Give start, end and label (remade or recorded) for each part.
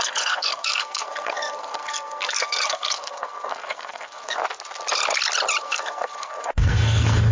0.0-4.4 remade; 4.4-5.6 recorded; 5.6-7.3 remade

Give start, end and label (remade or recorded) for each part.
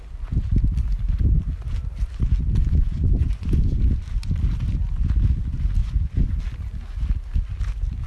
0.0-2.6 recorded; 2.6-3.9 remade; 3.9-5.8 recorded; 5.8-6.4 remade; 6.4-8.1 recorded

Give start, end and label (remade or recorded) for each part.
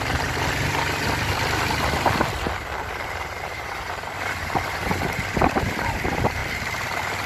0.0-7.3 remade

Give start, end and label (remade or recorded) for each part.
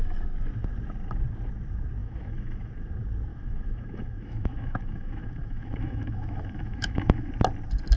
0.0-2.0 recorded; 2.0-2.7 remade; 2.7-3.3 recorded; 3.3-7.3 remade; 7.3-8.0 recorded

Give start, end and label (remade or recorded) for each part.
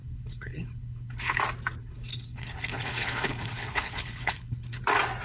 0.0-1.4 remade; 1.4-1.8 recorded; 1.8-4.8 remade; 4.8-5.2 recorded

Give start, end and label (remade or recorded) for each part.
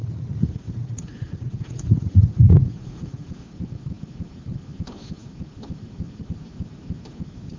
0.0-3.3 remade; 3.3-7.6 recorded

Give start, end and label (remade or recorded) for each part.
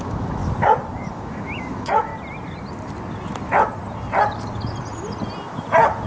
0.0-0.4 remade; 0.4-1.1 recorded; 1.1-2.1 remade; 2.1-6.1 recorded